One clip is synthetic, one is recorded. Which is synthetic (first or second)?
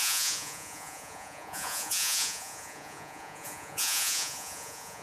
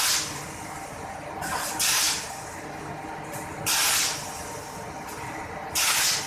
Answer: first